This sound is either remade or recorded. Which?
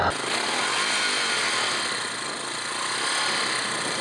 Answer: recorded